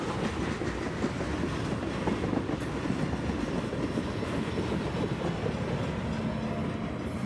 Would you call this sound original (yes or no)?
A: yes